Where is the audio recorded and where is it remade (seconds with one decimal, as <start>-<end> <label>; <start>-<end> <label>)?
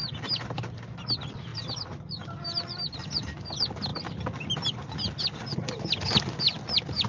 0.0-7.1 recorded